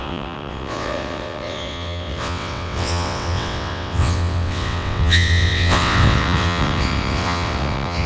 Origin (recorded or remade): remade